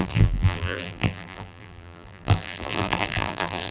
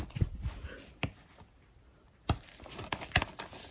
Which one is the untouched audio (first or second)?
second